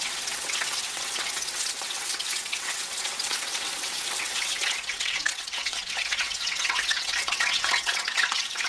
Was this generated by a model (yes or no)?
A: yes